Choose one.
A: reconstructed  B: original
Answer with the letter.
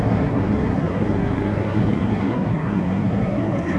A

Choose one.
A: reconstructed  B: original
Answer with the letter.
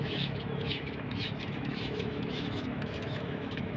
A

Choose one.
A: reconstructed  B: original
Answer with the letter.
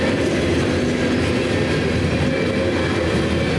B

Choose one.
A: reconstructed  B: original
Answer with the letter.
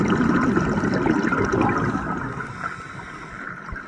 B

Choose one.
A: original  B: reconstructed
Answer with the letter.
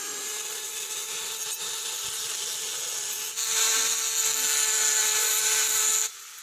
A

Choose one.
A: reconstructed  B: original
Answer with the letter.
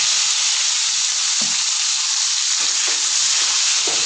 B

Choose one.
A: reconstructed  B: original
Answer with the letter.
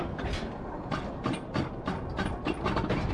B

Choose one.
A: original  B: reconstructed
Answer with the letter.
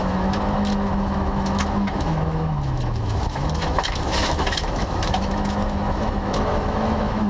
B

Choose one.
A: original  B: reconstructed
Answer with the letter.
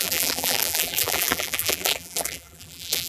B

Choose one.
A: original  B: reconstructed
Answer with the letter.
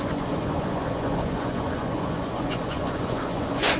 B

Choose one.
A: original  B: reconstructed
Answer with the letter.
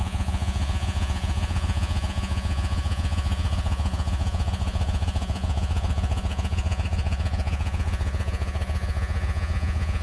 B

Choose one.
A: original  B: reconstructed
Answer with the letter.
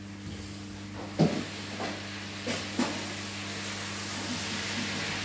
A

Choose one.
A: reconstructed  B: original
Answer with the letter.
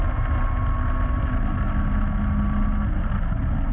B